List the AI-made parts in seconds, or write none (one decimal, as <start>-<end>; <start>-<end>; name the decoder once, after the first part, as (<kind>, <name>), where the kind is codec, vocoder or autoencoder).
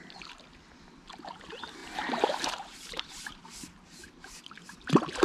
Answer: 1.8-3.4 (vocoder, BigVGAN v2)